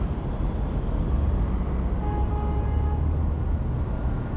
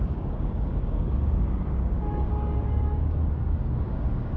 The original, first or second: first